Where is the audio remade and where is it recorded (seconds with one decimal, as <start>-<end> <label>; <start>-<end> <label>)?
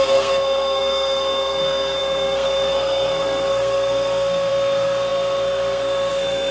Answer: 0.0-6.5 remade